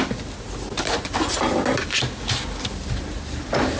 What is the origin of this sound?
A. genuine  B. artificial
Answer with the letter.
A